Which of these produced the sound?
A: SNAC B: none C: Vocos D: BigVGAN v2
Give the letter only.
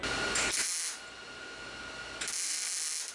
B